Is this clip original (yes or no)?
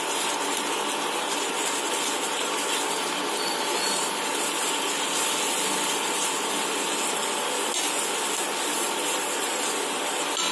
yes